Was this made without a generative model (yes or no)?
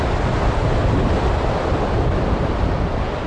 yes